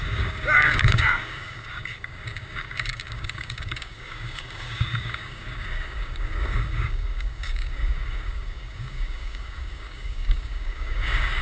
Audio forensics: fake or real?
fake